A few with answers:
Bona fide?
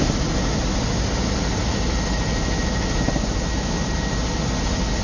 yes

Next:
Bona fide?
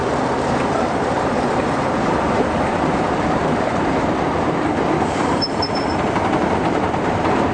no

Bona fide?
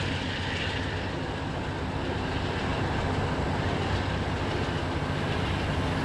yes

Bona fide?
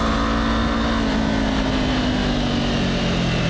yes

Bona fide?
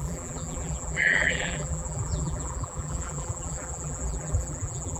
no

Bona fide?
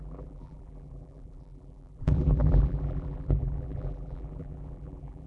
no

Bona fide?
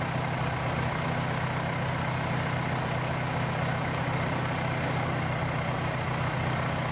yes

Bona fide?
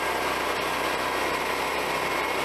no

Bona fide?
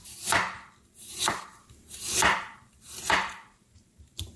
no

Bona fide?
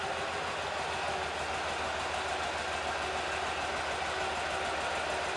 yes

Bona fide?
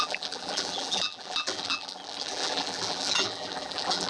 no